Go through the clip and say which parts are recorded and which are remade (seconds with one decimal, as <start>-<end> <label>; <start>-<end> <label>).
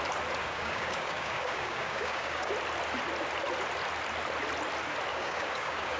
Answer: 0.0-0.4 recorded; 0.4-2.5 remade; 2.5-5.1 recorded; 5.1-6.0 remade